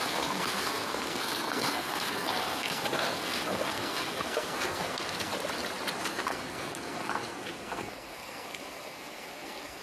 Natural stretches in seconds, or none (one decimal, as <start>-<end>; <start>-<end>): 5.3-6.0